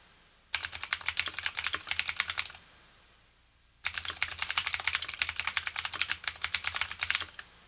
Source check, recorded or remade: recorded